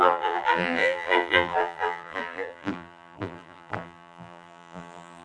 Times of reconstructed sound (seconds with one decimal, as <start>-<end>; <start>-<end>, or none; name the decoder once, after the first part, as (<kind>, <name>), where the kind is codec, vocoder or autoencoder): 0.0-5.2 (vocoder, BigVGAN v2)